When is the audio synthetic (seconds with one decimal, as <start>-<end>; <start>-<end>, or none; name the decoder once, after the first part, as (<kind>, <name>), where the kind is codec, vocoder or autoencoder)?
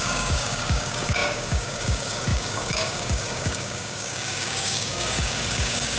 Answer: 0.0-6.0 (codec, DAC)